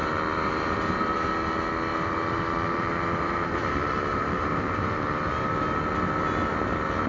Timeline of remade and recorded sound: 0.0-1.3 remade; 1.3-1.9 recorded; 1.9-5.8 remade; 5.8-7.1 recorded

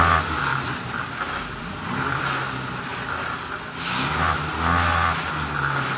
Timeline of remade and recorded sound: 0.0-0.5 recorded; 0.5-2.2 remade; 2.2-6.0 recorded

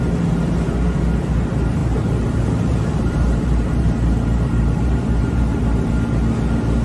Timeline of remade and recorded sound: 0.0-1.8 recorded; 1.8-5.9 remade; 5.9-6.8 recorded

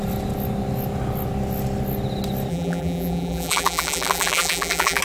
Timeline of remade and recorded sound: 0.0-2.5 recorded; 2.5-5.0 remade

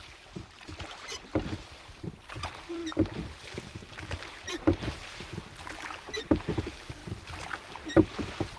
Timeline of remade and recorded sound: 0.0-2.8 remade; 2.8-4.9 recorded; 4.9-7.0 remade; 7.0-7.7 recorded; 7.7-8.6 remade

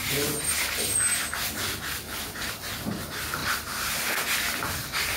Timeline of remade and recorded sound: 0.0-5.2 recorded

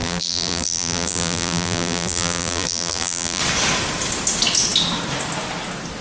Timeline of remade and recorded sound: 0.0-3.4 remade; 3.4-6.0 recorded